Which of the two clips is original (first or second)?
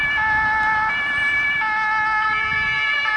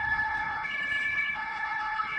first